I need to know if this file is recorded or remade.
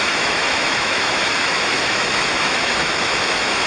remade